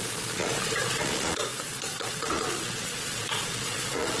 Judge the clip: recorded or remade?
remade